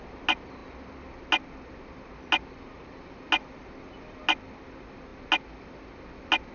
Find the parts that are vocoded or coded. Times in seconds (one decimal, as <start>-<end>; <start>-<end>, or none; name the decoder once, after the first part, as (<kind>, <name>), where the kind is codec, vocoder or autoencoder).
none